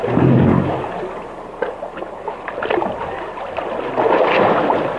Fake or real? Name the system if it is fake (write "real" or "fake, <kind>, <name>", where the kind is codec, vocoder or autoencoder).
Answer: real